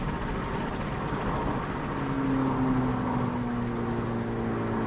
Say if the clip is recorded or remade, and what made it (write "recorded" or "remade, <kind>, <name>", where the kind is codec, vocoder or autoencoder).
recorded